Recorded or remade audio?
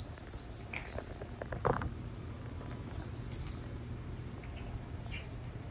recorded